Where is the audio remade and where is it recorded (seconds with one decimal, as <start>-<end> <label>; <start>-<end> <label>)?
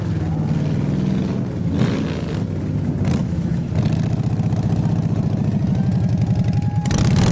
0.0-3.2 recorded; 3.2-3.7 remade; 3.7-7.3 recorded